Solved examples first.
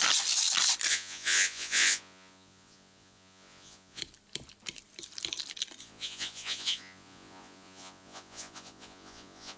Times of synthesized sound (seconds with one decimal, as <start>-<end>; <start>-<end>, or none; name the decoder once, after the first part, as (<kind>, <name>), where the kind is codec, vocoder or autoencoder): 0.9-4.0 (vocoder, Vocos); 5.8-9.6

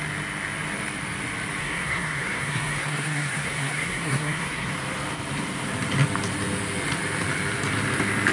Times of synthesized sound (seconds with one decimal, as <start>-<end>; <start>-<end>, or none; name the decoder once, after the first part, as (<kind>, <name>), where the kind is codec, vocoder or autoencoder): 1.6-4.7 (codec, SNAC)

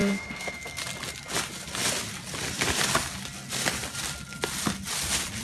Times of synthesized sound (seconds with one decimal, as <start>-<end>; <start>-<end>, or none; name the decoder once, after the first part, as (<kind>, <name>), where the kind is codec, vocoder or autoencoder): 0.0-0.8 (codec, SNAC)

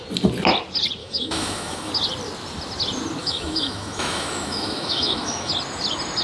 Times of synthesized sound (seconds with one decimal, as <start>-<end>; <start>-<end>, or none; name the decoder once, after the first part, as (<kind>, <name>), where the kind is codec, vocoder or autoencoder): 1.0-1.9 (autoencoder, DAC-VAE); 3.2-5.5